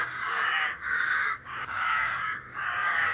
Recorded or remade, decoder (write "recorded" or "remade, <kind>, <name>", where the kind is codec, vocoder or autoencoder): remade, codec, DAC